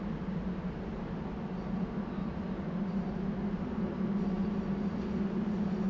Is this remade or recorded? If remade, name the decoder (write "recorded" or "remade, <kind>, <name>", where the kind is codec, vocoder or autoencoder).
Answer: recorded